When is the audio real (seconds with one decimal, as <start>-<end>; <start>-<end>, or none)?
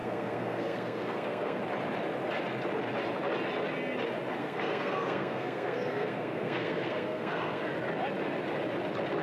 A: 1.6-4.4; 7.6-9.2